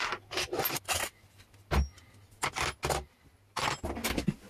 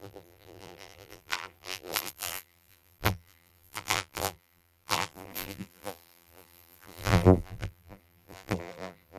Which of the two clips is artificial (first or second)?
second